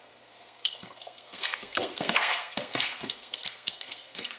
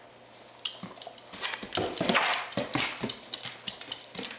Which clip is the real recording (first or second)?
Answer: second